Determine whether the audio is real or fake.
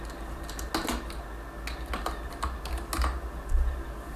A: real